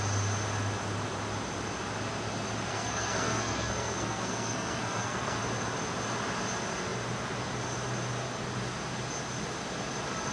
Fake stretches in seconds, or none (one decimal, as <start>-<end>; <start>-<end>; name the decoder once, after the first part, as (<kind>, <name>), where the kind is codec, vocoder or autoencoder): 2.7-5.4 (codec, SNAC)